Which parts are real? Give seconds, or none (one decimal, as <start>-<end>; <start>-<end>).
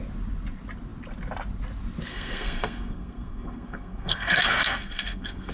0.0-2.1